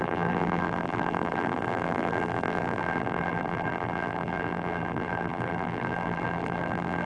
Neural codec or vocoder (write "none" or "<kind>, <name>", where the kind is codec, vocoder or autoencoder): vocoder, BigVGAN v2